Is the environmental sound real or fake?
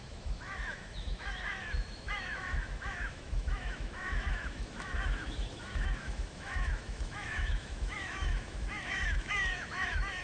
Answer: fake